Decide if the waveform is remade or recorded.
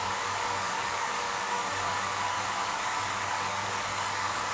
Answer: remade